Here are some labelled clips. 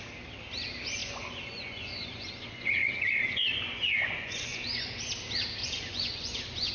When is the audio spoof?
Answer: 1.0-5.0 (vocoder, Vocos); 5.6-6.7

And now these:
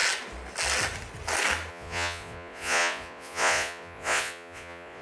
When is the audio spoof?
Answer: 1.7-5.0 (vocoder, Vocos)